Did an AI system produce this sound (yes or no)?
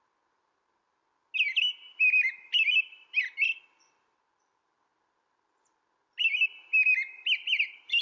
no